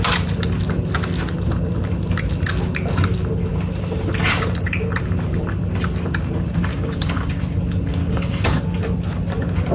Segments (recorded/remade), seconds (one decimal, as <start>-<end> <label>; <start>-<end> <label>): 0.0-6.7 recorded; 6.7-7.4 remade; 7.4-8.0 recorded; 8.0-8.6 remade; 8.6-9.7 recorded